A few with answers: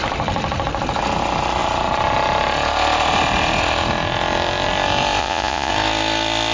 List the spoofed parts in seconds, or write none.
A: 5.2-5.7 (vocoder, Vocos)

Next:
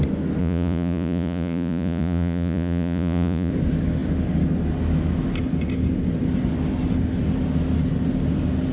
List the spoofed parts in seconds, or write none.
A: 0.4-3.5 (vocoder, Vocos)

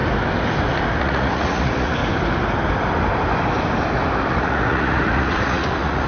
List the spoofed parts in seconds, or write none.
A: 1.0-2.0 (vocoder, Vocos); 4.3-6.1

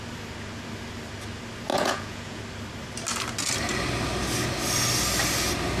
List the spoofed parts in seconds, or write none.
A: 1.7-2.4 (vocoder, Vocos)